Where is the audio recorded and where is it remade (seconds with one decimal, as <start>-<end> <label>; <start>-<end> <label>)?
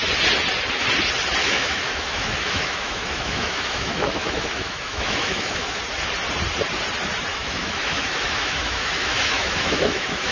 0.0-1.4 recorded; 1.4-5.8 remade; 5.8-7.3 recorded; 7.3-10.3 remade